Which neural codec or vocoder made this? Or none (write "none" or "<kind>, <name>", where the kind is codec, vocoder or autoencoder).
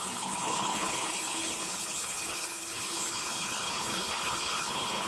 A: codec, HILCodec